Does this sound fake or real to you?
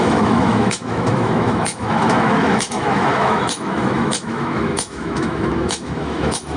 fake